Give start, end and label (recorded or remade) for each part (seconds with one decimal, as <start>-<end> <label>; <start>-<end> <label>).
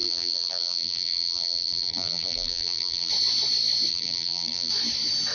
0.0-3.1 remade; 3.1-3.9 recorded; 3.9-4.7 remade; 4.7-5.3 recorded